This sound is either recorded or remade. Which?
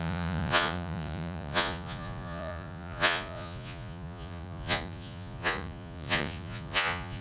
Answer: remade